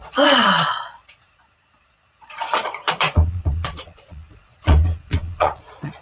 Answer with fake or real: fake